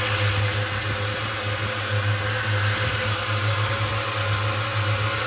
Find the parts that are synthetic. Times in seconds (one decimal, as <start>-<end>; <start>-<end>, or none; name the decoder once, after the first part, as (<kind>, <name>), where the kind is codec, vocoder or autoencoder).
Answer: none